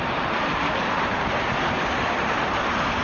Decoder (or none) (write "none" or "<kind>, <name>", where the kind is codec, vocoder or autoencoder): vocoder, BigVGAN v2